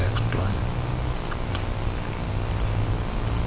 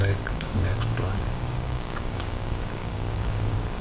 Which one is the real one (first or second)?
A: first